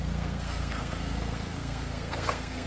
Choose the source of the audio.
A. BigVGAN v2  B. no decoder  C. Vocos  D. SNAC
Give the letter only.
D